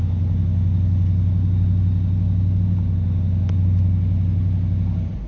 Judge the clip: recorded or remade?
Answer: recorded